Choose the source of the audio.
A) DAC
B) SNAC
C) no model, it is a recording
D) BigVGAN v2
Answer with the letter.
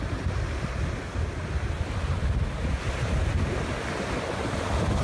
C